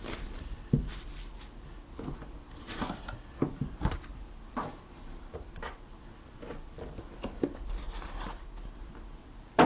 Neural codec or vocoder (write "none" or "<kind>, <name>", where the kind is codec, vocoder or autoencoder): none